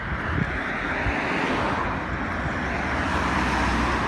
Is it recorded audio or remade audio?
recorded